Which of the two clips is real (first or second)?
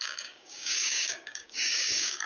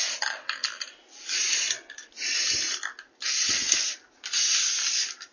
second